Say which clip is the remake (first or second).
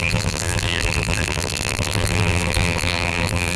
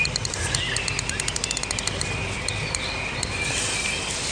first